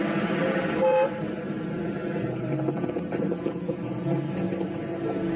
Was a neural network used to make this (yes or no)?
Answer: no